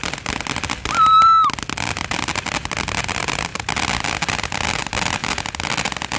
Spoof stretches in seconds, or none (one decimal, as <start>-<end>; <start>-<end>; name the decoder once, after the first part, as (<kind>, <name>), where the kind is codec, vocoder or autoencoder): none